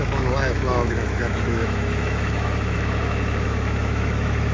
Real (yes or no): no